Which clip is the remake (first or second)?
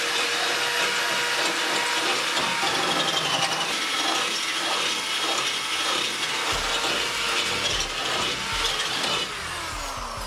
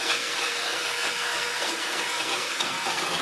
second